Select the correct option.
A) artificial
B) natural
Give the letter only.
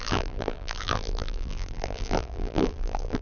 A